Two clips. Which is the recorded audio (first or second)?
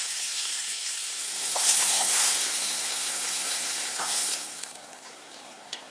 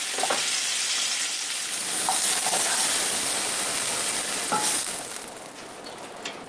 second